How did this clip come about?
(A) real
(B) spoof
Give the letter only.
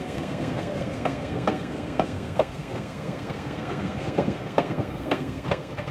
B